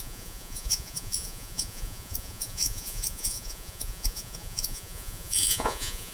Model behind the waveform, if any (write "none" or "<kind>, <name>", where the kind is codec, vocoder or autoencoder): vocoder, Vocos